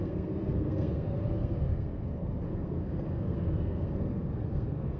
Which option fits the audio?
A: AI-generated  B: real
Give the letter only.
A